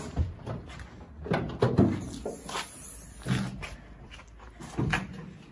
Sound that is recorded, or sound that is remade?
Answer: recorded